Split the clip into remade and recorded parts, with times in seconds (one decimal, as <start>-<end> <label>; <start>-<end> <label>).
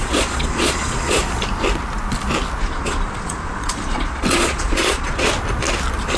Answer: 0.0-1.2 remade; 1.2-2.6 recorded; 2.6-5.3 remade; 5.3-6.2 recorded